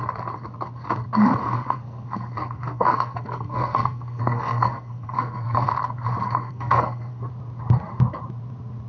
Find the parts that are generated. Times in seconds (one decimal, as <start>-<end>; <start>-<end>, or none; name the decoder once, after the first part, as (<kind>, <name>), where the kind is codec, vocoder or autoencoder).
1.4-5.7 (codec, SNAC); 6.2-7.2